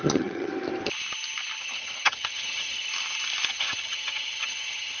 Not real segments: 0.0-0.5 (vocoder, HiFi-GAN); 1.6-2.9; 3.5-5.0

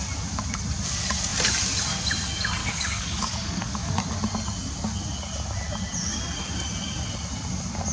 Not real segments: 2.6-3.9 (codec, DAC)

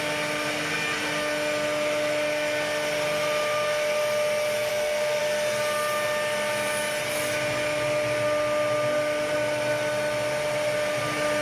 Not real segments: 4.7-5.2 (codec, SNAC)

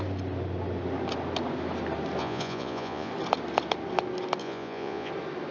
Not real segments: 2.2-3.1 (vocoder, Vocos); 4.4-5.1

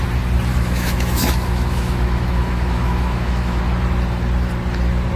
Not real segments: 0.5-3.6 (autoencoder, DAC-VAE)